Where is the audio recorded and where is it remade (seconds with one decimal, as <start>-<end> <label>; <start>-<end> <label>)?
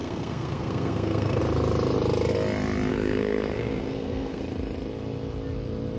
0.0-1.4 remade; 1.4-2.9 recorded; 2.9-4.4 remade; 4.4-6.0 recorded